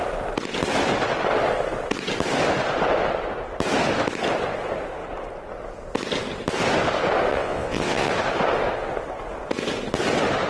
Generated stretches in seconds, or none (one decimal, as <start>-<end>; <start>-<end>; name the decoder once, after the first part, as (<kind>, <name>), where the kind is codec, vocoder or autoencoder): 7.3-8.1 (vocoder, WaveNeXt)